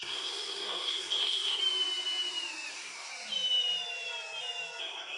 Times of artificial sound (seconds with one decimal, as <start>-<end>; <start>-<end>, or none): 0.0-1.6; 2.7-3.1; 4.8-5.2